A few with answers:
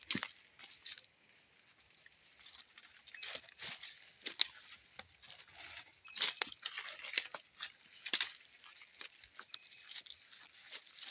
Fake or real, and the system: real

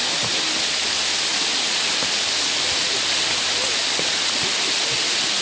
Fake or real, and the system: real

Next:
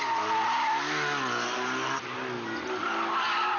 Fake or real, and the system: real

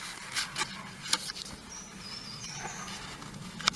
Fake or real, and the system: real